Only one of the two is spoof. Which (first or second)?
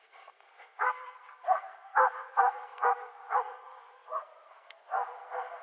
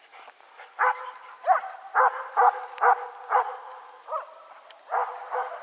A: first